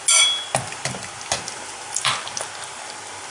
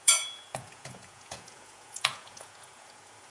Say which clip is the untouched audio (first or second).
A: first